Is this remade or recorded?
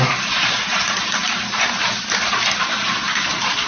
recorded